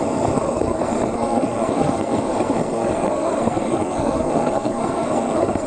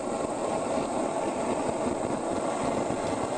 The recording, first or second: second